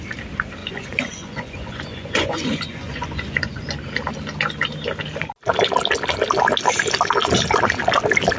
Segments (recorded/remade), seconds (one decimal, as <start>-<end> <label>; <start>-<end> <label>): 0.0-0.6 recorded; 0.6-3.7 remade; 3.7-8.4 recorded